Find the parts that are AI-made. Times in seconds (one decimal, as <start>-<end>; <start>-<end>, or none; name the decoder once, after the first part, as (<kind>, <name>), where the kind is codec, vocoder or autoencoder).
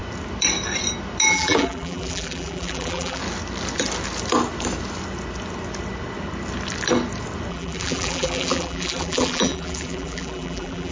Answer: 1.3-3.2 (vocoder, BigVGAN v2); 7.5-10.9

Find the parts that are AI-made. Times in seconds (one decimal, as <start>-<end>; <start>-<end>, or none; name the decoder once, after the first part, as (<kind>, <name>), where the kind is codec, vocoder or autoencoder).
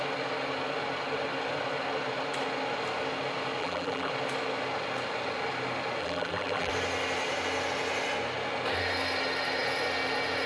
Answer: 3.6-4.1 (vocoder, BigVGAN v2); 6.0-6.7